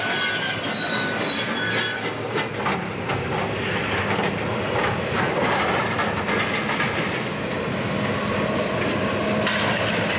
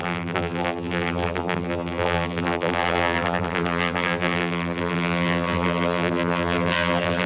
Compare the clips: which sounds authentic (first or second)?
first